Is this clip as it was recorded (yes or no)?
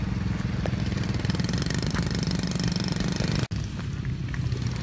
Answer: yes